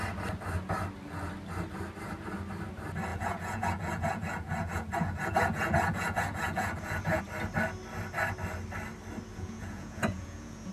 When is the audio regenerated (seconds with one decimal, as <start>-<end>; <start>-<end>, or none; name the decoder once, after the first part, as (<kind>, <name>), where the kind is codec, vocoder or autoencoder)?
3.1-7.2 (vocoder, Vocos); 9.3-10.7